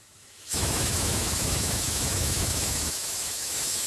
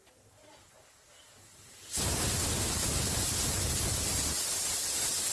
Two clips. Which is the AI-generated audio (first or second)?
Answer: first